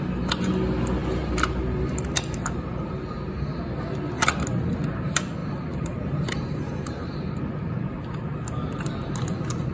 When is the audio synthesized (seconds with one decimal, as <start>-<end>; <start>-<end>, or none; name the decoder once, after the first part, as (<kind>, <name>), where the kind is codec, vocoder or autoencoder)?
1.0-3.5 (vocoder, BigVGAN v2); 5.4-7.4